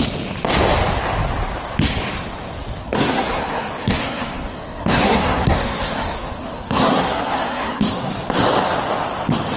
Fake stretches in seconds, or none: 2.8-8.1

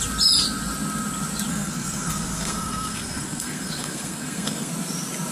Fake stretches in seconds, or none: 1.5-4.7

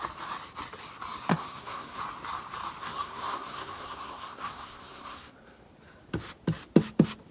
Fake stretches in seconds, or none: 1.3-2.0; 2.8-5.7

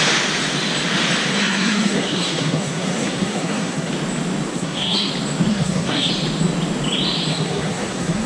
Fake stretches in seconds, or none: 1.3-3.9; 4.5-5.1; 5.5-6.1; 7.3-8.3

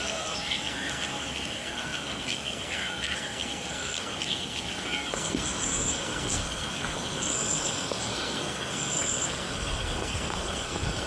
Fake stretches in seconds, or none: 0.0-11.1

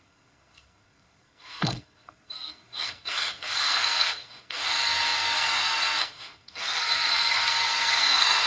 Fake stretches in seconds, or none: 0.0-8.5

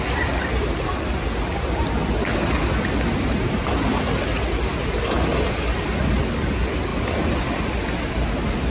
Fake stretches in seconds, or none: none